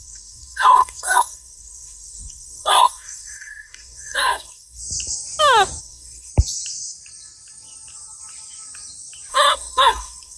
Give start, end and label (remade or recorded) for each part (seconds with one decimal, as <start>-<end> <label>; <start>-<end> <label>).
0.0-4.8 remade; 4.8-5.8 recorded; 5.8-6.3 remade; 6.3-9.3 recorded; 9.3-10.4 remade